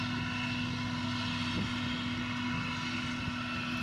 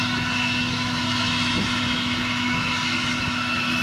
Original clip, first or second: first